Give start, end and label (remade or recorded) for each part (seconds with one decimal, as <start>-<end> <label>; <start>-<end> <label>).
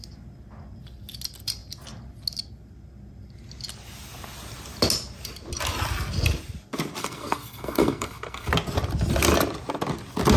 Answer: 0.0-7.0 recorded; 7.0-8.5 remade; 8.5-10.4 recorded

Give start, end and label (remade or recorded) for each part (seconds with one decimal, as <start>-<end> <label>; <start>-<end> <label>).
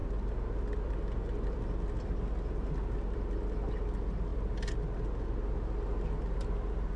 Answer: 0.0-7.0 recorded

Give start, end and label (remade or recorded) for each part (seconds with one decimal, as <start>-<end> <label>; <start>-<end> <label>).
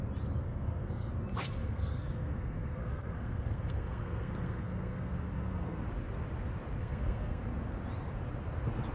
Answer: 0.0-0.4 recorded; 0.4-1.1 remade; 1.1-1.6 recorded; 1.6-5.8 remade; 5.8-6.8 recorded; 6.8-7.4 remade; 7.4-8.9 recorded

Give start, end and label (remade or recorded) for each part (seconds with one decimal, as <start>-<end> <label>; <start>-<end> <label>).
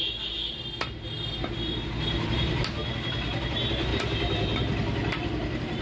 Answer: 0.0-5.8 recorded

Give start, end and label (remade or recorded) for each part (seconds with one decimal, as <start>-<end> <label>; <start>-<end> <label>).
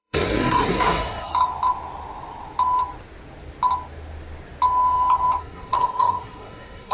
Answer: 0.0-1.3 remade; 1.3-5.4 recorded; 5.4-6.9 remade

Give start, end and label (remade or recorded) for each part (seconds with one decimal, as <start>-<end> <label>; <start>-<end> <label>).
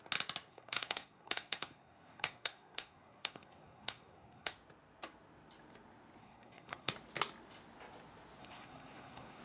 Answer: 0.0-0.5 recorded; 0.5-4.5 remade; 4.5-6.2 recorded; 6.2-6.9 remade; 6.9-8.4 recorded; 8.4-9.4 remade